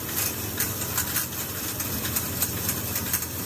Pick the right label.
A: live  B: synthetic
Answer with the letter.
A